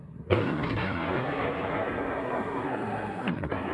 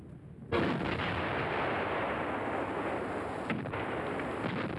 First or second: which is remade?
first